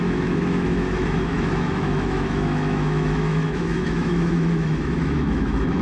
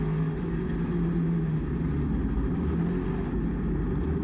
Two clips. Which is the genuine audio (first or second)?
second